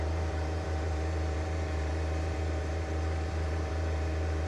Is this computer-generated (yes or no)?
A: yes